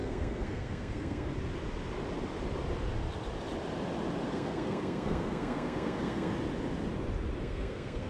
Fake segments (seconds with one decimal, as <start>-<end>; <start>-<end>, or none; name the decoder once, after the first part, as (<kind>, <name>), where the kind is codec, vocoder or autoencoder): 0.0-1.3 (codec, SNAC); 4.3-6.3; 7.4-8.1